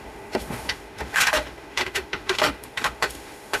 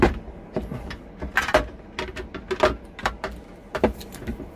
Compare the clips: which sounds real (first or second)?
second